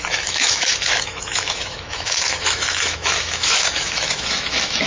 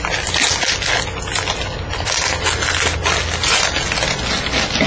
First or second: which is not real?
first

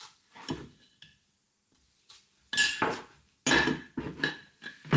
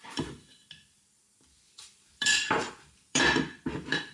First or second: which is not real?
second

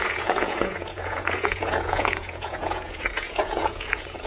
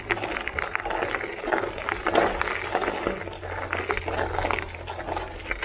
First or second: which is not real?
first